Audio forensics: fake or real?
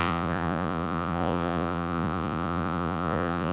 fake